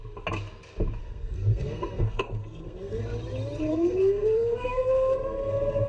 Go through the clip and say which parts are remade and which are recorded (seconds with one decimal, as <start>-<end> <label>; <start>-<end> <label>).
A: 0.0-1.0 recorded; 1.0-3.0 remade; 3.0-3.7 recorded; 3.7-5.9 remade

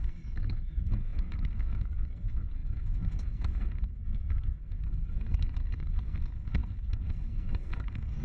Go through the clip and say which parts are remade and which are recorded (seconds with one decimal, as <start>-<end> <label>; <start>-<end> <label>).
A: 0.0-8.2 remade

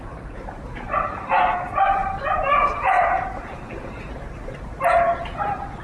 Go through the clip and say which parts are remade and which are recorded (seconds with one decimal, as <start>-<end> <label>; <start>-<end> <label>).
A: 0.0-5.8 recorded